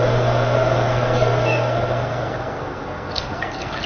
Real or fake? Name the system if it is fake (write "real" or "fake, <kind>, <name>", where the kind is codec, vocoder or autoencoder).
fake, codec, SNAC